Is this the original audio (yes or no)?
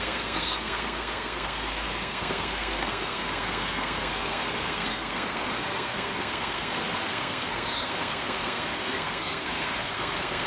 no